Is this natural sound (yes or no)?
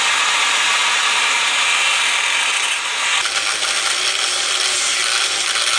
yes